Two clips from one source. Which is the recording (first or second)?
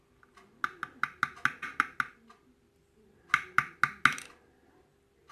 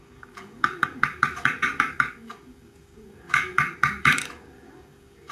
first